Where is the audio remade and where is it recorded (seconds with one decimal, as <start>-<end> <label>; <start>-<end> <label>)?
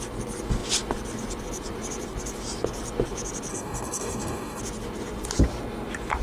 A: 0.0-3.5 recorded; 3.5-4.6 remade; 4.6-6.2 recorded